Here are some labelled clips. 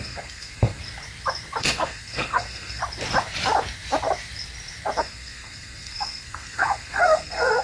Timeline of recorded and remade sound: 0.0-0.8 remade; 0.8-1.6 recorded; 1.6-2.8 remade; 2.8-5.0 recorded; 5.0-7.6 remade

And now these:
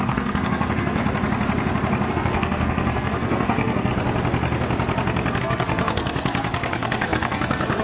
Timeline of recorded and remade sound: 0.0-1.0 remade; 1.0-2.1 recorded; 2.1-3.9 remade; 3.9-5.4 recorded; 5.4-7.8 remade

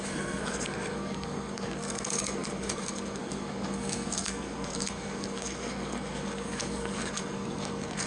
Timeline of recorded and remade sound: 0.0-8.1 remade

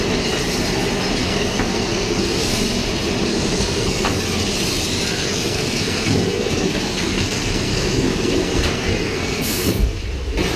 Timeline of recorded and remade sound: 0.0-1.2 recorded; 1.2-2.6 remade; 2.6-3.3 recorded; 3.3-4.2 remade; 4.2-5.1 recorded; 5.1-10.0 remade; 10.0-10.6 recorded

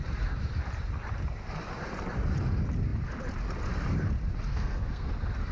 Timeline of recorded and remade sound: 0.0-4.5 recorded; 4.5-5.1 remade; 5.1-5.5 recorded

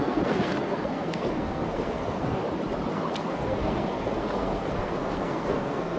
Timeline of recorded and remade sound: 0.0-2.4 remade; 2.4-2.9 recorded; 2.9-6.0 remade